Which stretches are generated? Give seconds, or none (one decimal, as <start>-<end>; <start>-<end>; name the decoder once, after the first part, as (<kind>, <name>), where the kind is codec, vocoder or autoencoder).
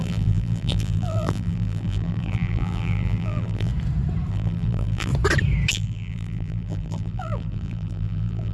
0.0-3.7 (vocoder, BigVGAN v2); 4.3-5.1; 5.7-8.5